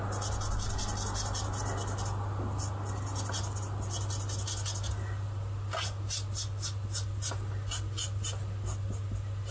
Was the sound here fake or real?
real